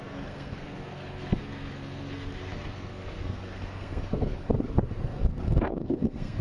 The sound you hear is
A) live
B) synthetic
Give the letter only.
B